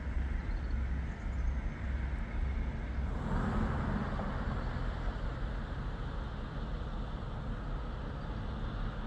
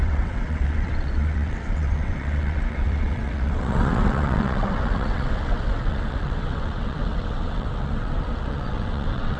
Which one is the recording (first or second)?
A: first